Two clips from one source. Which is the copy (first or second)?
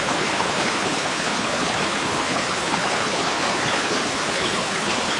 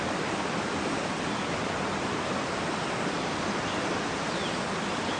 first